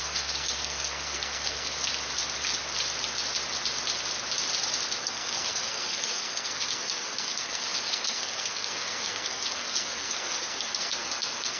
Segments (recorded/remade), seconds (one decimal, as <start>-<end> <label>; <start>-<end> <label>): 0.0-1.9 remade; 1.9-5.0 recorded; 5.0-11.6 remade